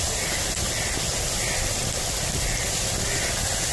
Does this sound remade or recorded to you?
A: recorded